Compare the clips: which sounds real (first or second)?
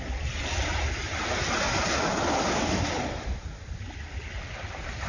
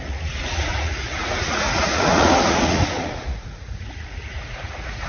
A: first